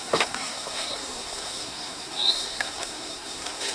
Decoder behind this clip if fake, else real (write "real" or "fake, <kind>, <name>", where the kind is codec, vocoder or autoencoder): fake, codec, SNAC